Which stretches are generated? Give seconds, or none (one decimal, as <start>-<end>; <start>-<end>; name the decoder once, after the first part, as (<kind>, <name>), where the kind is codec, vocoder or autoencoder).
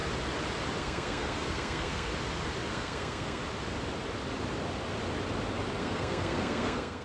0.8-2.1 (codec, SNAC); 2.7-3.4; 5.8-7.0